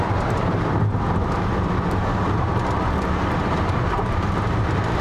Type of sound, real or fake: fake